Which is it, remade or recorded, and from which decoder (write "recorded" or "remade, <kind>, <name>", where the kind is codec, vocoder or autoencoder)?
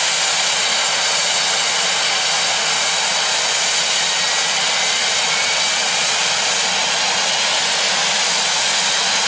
recorded